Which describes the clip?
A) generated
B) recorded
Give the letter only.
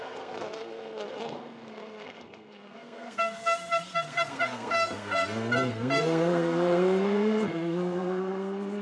A